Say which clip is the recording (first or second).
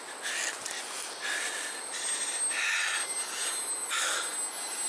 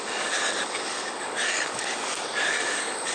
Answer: first